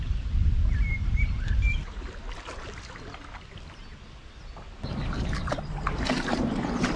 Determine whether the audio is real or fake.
real